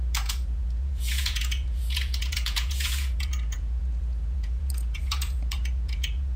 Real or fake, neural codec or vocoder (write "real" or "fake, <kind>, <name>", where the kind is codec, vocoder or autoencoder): fake, vocoder, Vocos